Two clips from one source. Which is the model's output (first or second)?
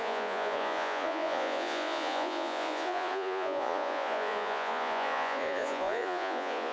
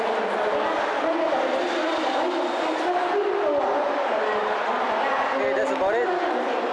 first